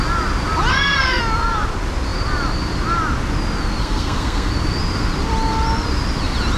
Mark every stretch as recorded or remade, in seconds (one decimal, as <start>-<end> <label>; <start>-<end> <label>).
0.0-0.7 recorded; 0.7-1.2 remade; 1.2-3.8 recorded; 3.8-4.5 remade; 4.5-6.6 recorded